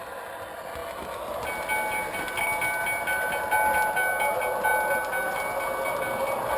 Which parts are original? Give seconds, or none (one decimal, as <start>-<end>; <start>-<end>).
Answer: 0.0-6.6